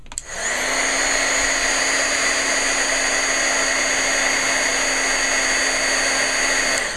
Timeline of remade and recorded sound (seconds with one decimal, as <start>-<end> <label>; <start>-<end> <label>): 0.0-7.0 recorded